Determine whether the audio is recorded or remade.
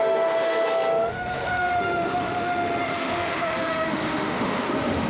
remade